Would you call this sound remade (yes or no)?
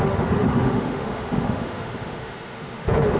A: yes